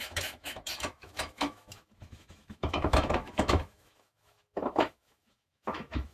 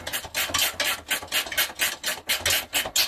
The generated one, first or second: first